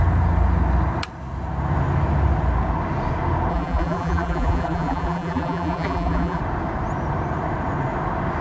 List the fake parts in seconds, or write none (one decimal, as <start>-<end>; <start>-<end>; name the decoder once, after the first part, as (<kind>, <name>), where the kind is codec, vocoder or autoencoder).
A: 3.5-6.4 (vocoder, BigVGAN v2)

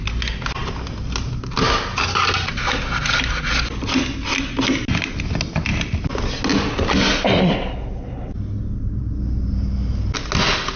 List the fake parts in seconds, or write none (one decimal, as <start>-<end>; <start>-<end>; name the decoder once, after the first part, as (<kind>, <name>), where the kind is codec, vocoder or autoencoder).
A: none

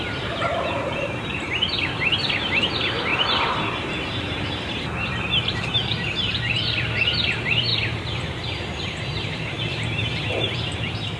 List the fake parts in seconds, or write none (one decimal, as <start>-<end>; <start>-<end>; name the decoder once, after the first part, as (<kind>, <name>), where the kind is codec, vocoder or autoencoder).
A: 0.0-11.2 (vocoder, BigVGAN v2)

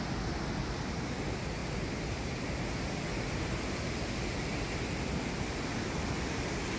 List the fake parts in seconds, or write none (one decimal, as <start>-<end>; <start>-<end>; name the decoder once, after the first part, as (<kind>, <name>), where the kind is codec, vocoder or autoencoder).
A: none

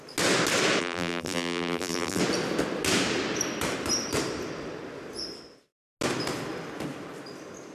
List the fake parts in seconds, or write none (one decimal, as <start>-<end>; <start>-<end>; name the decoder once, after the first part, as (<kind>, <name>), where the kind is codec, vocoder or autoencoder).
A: 0.8-2.2 (vocoder, BigVGAN v2)

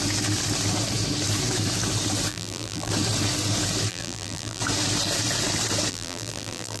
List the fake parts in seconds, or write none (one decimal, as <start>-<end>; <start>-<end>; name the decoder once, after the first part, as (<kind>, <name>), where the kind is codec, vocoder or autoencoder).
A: 2.3-2.9 (vocoder, BigVGAN v2); 3.9-4.6; 5.9-6.8